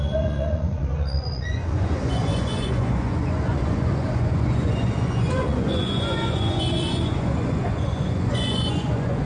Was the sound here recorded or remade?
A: remade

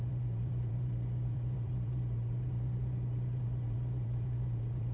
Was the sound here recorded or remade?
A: remade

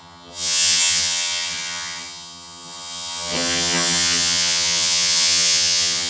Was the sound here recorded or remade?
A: remade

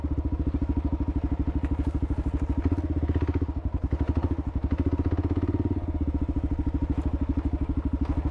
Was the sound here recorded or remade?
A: recorded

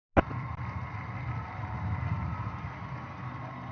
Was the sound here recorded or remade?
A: recorded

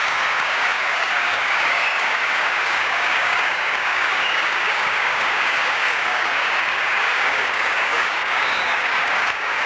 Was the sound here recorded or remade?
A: remade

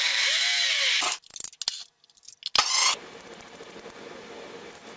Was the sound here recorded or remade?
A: recorded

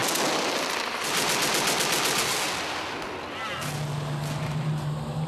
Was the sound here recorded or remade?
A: recorded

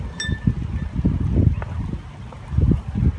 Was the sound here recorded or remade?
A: recorded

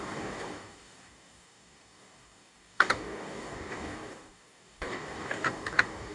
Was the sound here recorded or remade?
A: remade